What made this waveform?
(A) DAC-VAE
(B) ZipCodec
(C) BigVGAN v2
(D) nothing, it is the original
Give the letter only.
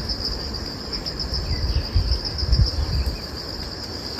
D